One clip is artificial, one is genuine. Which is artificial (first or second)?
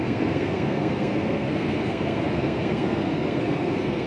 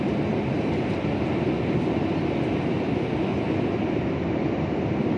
first